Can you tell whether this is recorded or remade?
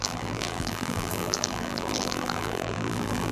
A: remade